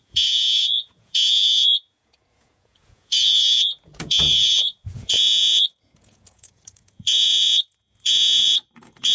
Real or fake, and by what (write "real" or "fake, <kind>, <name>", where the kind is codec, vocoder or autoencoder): fake, vocoder, Vocos